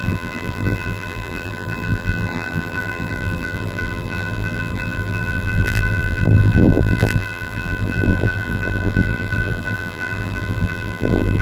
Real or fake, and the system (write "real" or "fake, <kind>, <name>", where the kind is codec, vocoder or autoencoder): fake, vocoder, BigVGAN v2